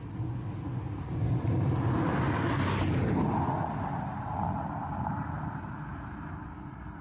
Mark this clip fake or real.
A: real